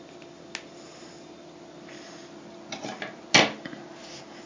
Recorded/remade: recorded